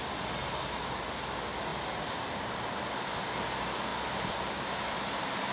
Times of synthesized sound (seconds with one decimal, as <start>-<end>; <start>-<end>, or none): none